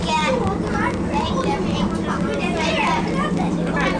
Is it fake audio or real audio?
real